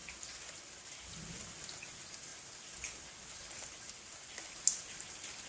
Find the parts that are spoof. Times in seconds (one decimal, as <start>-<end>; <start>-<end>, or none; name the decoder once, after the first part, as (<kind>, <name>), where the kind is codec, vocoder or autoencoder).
none